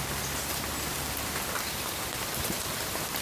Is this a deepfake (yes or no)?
no